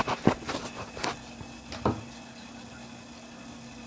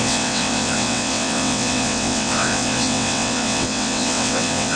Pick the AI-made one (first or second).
second